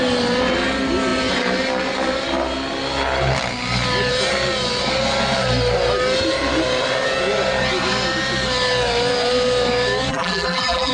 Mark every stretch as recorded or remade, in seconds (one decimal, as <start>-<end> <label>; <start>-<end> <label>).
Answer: 0.0-10.1 recorded; 10.1-10.9 remade